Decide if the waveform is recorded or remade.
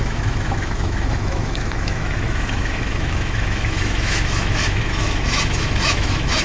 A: remade